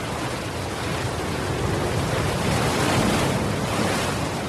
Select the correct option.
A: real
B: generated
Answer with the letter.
A